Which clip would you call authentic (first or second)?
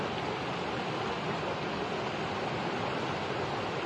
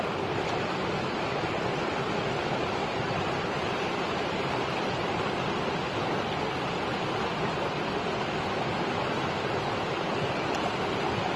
first